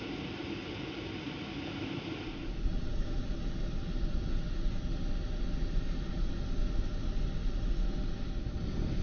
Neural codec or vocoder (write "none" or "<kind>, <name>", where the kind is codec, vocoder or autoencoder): none